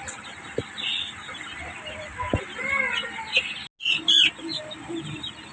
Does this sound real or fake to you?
real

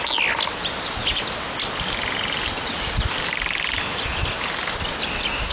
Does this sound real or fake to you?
real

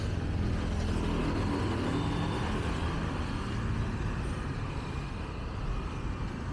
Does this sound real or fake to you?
real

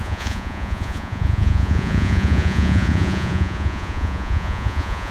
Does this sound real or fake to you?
fake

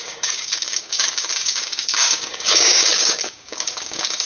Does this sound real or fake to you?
fake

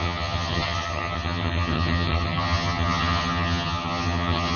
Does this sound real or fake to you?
fake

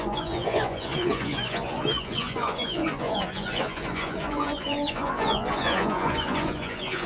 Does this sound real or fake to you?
fake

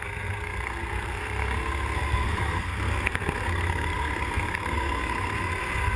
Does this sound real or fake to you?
fake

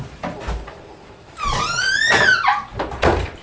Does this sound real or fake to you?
fake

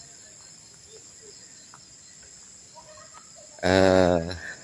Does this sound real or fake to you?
real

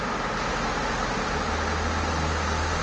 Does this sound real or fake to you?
real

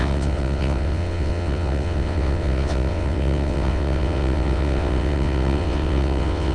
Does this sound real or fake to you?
fake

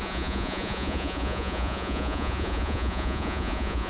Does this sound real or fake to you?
fake